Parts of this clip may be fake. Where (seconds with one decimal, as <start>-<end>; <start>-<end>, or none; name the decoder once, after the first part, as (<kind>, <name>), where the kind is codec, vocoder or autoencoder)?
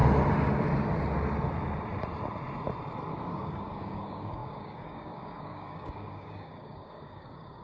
3.1-7.6 (codec, DAC)